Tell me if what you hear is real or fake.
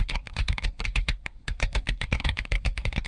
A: fake